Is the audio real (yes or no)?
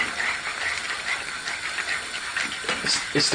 yes